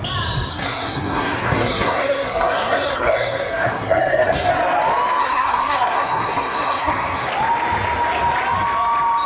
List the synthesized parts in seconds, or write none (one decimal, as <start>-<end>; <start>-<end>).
0.5-4.5; 5.2-7.3